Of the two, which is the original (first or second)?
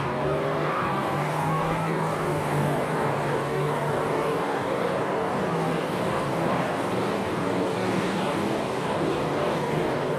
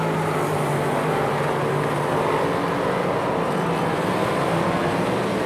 second